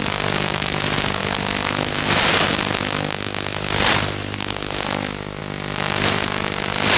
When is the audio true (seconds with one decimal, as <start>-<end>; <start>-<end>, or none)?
0.0-7.0